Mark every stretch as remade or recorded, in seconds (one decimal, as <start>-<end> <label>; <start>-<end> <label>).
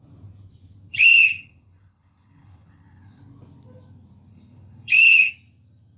0.0-0.9 recorded; 0.9-3.2 remade; 3.2-4.3 recorded; 4.3-5.3 remade; 5.3-6.0 recorded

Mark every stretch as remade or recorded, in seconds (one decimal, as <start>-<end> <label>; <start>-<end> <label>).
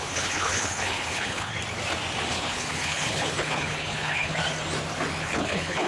0.0-1.5 remade; 1.5-2.3 recorded; 2.3-4.4 remade; 4.4-5.2 recorded; 5.2-5.9 remade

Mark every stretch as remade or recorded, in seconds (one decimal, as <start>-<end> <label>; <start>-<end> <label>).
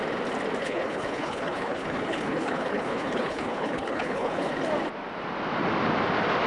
0.0-0.6 recorded; 0.6-4.5 remade; 4.5-6.5 recorded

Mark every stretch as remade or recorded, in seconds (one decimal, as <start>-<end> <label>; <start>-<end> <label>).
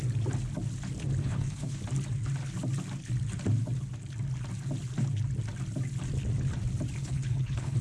0.0-1.2 recorded; 1.2-1.8 remade; 1.8-7.0 recorded; 7.0-7.8 remade